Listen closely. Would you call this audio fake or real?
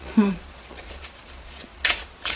fake